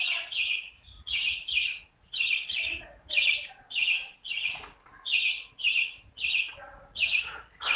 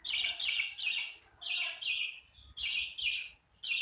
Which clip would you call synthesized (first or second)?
first